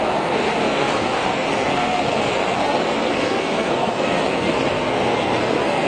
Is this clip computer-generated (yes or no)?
yes